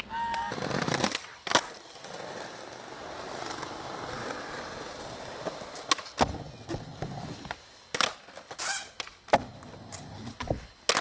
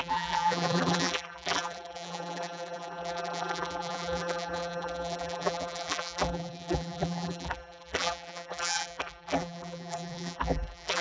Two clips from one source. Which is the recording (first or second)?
first